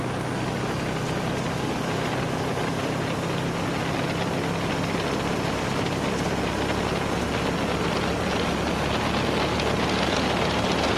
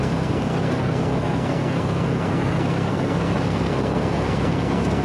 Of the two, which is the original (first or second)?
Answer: first